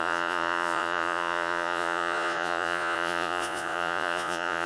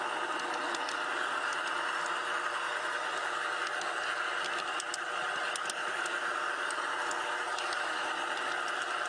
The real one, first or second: second